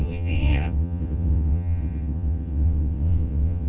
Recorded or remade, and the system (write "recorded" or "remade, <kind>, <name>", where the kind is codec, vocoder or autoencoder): remade, vocoder, WaveNeXt